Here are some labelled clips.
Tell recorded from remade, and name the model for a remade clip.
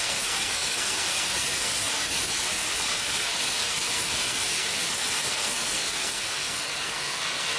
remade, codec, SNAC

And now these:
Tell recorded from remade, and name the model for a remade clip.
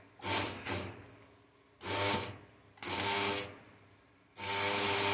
recorded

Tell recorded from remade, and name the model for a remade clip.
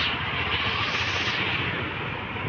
recorded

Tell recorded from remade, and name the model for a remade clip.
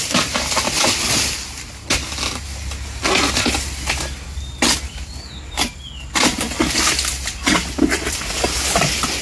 recorded